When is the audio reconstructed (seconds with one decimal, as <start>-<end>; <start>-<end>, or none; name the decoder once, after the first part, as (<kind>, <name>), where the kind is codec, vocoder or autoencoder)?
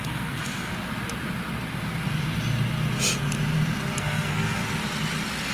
0.0-0.7 (codec, SNAC); 4.0-4.6